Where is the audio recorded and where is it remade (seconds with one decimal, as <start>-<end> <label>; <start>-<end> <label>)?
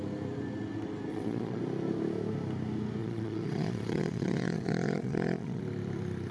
0.0-1.1 recorded; 1.1-1.6 remade; 1.6-3.0 recorded; 3.0-5.6 remade; 5.6-6.3 recorded